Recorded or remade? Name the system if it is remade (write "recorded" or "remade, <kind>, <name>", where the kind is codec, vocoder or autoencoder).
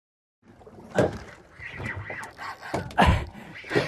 recorded